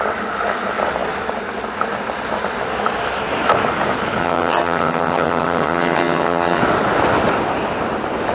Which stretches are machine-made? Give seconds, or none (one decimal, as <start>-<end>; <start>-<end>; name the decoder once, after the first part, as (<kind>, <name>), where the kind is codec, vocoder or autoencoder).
4.2-6.6 (vocoder, HiFi-GAN)